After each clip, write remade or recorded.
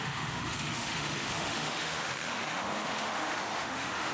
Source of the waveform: remade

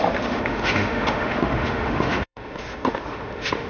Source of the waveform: remade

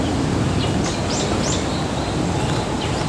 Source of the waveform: recorded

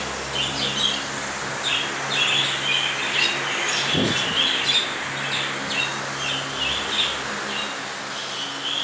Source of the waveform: recorded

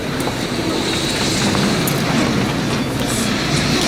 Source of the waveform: recorded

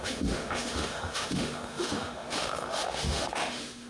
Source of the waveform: remade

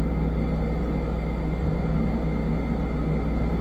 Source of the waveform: recorded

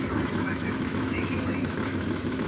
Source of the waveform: remade